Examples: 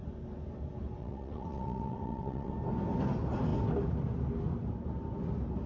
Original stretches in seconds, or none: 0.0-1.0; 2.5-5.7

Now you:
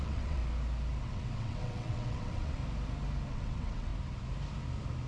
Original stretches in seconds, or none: 0.4-1.0; 2.6-3.3; 3.9-5.1

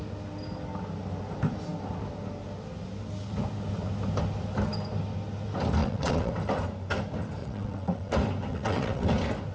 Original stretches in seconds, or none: 0.0-5.8; 6.3-7.4; 8.1-8.5; 9.1-9.5

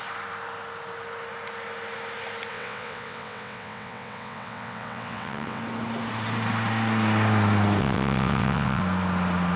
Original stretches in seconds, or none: 0.0-2.5; 5.6-7.8; 8.8-9.6

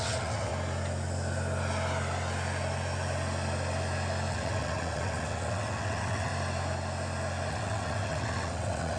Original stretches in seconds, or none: 0.5-4.3; 6.3-7.5

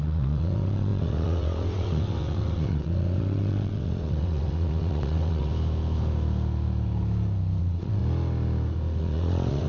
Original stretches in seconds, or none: 5.5-7.6; 8.0-9.0

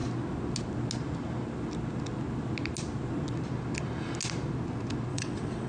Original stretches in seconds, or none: 0.0-5.1